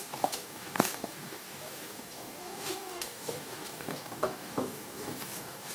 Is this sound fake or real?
fake